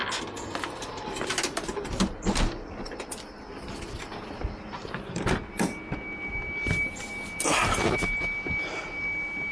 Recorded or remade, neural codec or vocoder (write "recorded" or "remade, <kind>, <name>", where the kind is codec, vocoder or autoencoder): recorded